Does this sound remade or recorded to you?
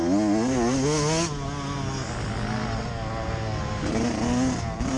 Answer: recorded